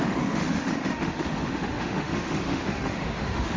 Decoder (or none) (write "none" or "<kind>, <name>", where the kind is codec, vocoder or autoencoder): autoencoder, DAC-VAE